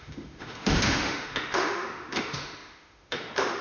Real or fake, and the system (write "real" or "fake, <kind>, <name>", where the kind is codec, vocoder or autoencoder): fake, autoencoder, DAC-VAE